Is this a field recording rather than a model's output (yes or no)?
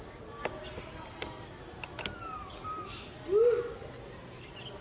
yes